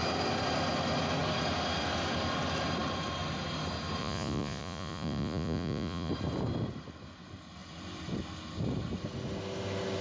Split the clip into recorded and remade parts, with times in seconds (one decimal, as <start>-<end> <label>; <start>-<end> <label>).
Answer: 0.0-4.0 recorded; 4.0-6.1 remade; 6.1-10.0 recorded